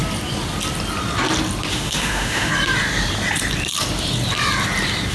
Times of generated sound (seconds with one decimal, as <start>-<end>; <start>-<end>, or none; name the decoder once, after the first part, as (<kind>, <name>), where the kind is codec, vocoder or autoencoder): 1.7-2.5 (autoencoder, DAC-VAE)